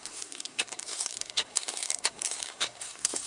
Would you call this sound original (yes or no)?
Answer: no